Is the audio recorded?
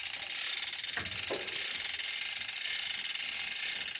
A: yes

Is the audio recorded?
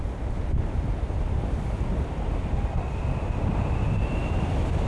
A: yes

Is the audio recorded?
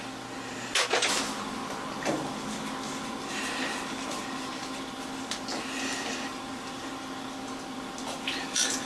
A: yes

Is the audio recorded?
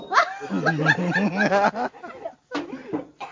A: yes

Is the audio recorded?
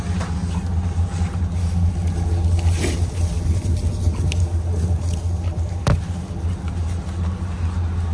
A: yes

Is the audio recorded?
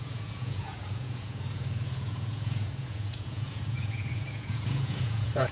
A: no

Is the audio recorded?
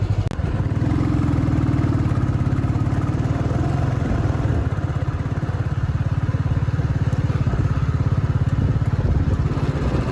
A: yes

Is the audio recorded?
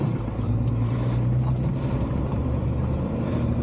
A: no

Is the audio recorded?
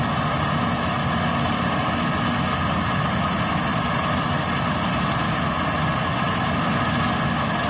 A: yes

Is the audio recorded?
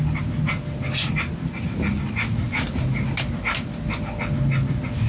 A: yes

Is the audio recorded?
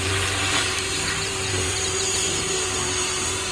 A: no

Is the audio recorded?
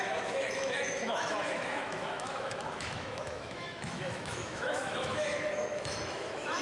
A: no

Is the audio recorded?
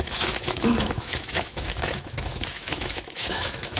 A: no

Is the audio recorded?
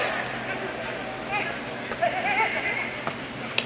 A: yes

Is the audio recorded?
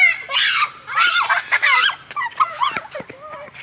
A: no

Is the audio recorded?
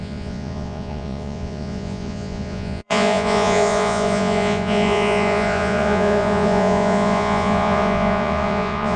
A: no